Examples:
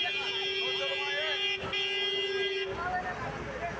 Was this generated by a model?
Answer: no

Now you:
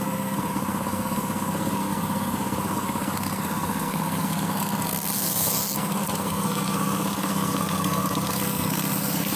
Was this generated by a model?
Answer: yes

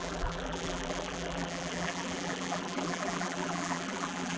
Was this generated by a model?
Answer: yes